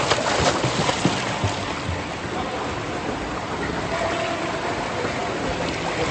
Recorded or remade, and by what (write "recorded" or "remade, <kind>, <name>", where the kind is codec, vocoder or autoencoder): recorded